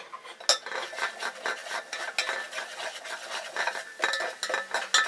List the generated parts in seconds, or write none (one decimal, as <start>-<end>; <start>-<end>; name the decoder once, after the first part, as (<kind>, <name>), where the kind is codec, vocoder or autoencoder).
none